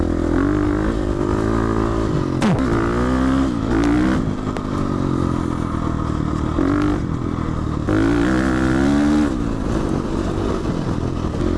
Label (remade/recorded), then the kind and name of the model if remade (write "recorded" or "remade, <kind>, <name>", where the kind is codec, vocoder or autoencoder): recorded